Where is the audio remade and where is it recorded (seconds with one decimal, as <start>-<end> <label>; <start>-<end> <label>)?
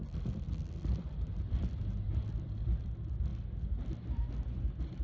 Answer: 0.0-2.3 recorded; 2.3-3.3 remade; 3.3-5.0 recorded